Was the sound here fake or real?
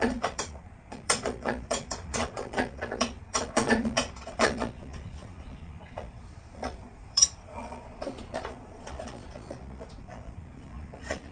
fake